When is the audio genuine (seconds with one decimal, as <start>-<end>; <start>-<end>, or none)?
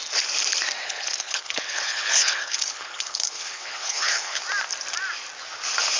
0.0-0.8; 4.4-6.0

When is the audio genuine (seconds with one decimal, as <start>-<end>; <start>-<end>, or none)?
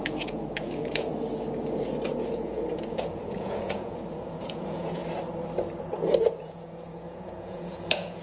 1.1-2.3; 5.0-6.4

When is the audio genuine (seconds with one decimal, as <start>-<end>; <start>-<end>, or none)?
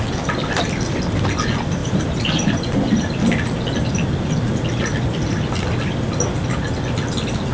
0.0-1.8; 3.2-7.5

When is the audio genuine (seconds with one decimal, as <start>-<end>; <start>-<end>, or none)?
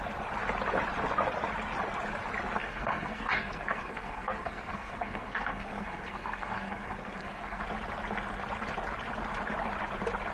0.0-2.6; 7.6-10.3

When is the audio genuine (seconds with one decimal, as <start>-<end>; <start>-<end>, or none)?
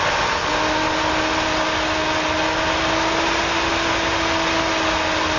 0.0-5.4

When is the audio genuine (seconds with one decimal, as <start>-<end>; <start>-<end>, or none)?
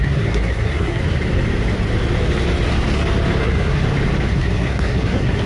1.0-3.4; 3.8-4.3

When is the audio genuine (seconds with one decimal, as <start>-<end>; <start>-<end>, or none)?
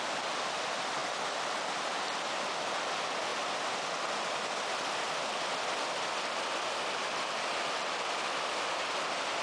0.0-9.4